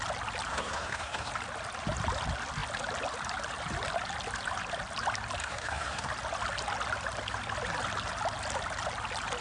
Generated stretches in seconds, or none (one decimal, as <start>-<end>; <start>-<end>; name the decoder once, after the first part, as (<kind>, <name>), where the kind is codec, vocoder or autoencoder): 0.5-1.3 (codec, SNAC); 5.4-6.1